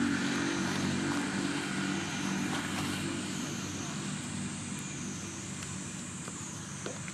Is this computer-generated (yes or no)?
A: no